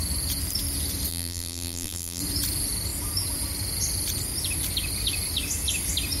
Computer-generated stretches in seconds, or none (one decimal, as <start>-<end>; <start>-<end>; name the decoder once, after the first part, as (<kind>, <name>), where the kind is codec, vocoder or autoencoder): 1.1-2.2 (vocoder, BigVGAN v2)